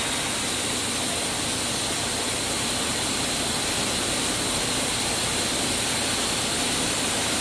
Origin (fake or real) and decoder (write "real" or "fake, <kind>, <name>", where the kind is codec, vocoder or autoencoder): real